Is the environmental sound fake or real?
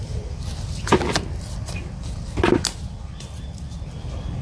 real